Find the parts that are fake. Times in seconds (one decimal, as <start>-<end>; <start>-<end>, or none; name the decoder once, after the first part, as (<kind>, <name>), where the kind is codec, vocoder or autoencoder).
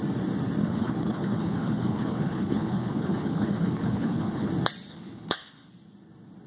0.6-4.5 (codec, HILCodec); 4.9-5.7